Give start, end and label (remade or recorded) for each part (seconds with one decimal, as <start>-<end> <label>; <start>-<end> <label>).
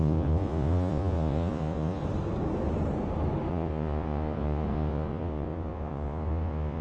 0.0-2.0 remade; 2.0-3.5 recorded; 3.5-6.8 remade